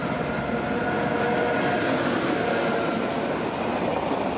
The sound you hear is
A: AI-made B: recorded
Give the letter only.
B